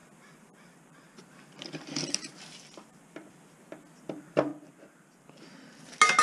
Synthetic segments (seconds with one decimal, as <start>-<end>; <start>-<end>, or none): 0.0-3.7; 4.5-5.8